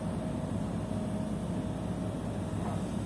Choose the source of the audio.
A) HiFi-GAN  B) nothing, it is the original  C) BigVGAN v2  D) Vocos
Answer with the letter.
B